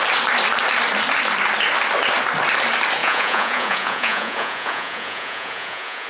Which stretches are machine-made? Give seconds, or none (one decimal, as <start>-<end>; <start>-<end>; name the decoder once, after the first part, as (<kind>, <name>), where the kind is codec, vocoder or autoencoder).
3.0-6.1 (vocoder, Vocos)